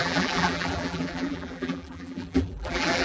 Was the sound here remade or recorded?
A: remade